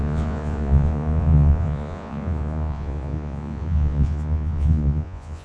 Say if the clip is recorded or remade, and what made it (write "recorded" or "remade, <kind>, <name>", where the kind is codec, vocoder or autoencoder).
remade, vocoder, Vocos